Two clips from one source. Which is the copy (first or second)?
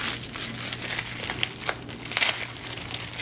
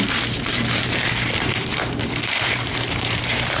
second